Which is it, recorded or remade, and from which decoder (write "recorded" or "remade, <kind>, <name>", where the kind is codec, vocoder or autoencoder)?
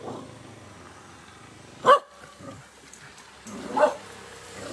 recorded